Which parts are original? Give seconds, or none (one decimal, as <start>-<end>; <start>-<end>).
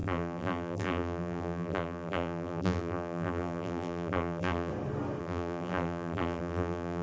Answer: 4.7-5.2